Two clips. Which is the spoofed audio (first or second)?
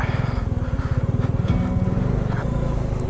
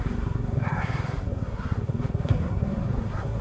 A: second